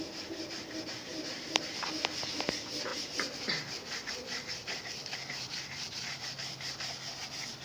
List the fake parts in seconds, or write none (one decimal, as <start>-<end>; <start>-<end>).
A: 1.1-1.8; 2.9-6.2